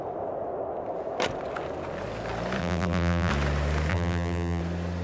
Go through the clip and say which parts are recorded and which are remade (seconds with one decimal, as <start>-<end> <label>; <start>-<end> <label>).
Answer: 0.0-2.6 recorded; 2.6-3.3 remade; 3.3-3.9 recorded; 3.9-4.6 remade; 4.6-5.0 recorded